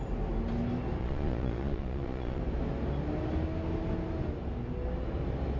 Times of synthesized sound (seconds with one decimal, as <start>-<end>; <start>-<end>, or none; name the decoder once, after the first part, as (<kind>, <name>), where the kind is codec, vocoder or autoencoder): 1.0-2.4 (vocoder, Vocos)